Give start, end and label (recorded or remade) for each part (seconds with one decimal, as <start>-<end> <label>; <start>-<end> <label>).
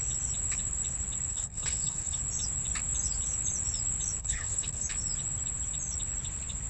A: 0.0-1.3 recorded; 1.3-2.2 remade; 2.2-4.2 recorded; 4.2-4.9 remade; 4.9-6.7 recorded